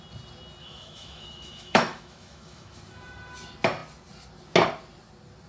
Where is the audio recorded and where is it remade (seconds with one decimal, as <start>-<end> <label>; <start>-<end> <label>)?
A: 0.0-0.6 recorded; 0.6-2.8 remade; 2.8-5.5 recorded